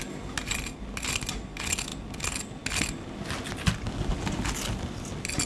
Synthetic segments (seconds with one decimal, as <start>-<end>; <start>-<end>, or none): none